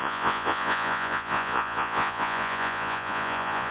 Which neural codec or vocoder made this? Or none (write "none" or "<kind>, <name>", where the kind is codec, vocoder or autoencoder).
vocoder, Vocos